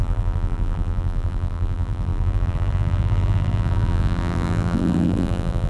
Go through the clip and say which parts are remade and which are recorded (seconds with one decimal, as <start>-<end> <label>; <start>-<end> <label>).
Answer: 0.0-5.7 remade